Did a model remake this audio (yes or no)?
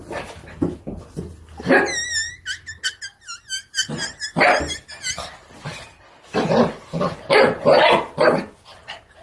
no